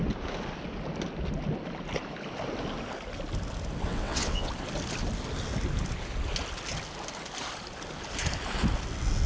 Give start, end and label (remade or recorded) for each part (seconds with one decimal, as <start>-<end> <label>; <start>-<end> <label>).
0.0-3.9 recorded; 3.9-4.5 remade; 4.5-9.3 recorded